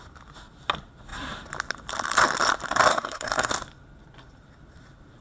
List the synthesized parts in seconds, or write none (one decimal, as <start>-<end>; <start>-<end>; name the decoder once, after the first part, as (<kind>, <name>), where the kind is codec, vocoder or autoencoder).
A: 2.9-3.5 (codec, SNAC)